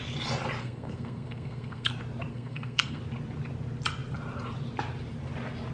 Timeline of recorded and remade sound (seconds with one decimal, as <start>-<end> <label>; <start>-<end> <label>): 0.0-0.6 recorded; 0.6-1.9 remade; 1.9-2.3 recorded; 2.3-3.0 remade; 3.0-5.7 recorded